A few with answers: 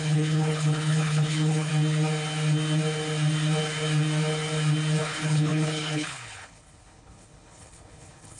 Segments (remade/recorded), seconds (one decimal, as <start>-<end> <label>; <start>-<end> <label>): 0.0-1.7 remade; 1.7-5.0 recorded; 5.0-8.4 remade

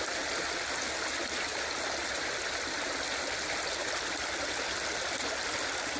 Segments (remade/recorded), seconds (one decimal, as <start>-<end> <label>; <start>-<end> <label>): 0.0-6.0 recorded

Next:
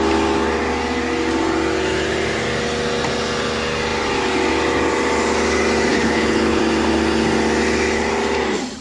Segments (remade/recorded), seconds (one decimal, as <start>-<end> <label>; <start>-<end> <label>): 0.0-5.9 recorded; 5.9-6.6 remade; 6.6-8.8 recorded

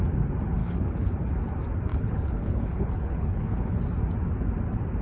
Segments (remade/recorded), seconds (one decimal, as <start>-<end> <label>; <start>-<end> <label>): 0.0-0.6 recorded; 0.6-1.3 remade; 1.3-1.9 recorded; 1.9-3.8 remade; 3.8-5.0 recorded

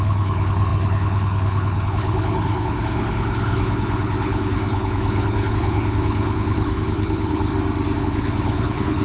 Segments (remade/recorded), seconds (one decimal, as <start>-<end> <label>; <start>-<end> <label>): 0.0-7.5 remade; 7.5-8.0 recorded; 8.0-9.0 remade

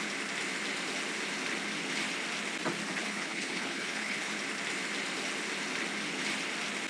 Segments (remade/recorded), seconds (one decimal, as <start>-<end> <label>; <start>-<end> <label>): 0.0-3.0 recorded; 3.0-4.3 remade; 4.3-6.9 recorded

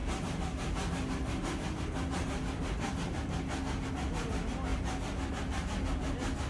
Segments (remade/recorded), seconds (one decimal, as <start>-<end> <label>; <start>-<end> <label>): 0.0-6.5 recorded

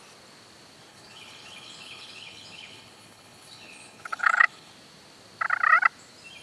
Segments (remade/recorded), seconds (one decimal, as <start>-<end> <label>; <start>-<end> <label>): 0.0-0.9 recorded; 0.9-4.7 remade; 4.7-6.4 recorded